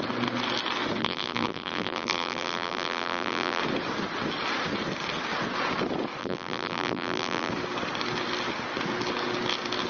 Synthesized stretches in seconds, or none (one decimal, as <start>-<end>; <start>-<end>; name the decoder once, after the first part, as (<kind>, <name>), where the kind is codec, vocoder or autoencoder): 1.0-3.6 (vocoder, BigVGAN v2); 6.2-7.5